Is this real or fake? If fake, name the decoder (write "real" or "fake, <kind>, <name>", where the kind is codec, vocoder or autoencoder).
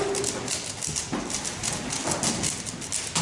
real